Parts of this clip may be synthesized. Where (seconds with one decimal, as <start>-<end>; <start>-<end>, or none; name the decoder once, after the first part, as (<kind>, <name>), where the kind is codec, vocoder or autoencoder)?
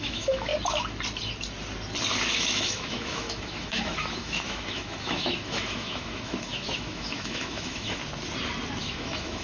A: 0.0-0.5 (autoencoder, DAC-VAE); 2.3-8.0; 8.8-9.4